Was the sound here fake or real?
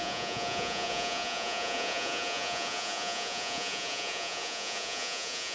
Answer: fake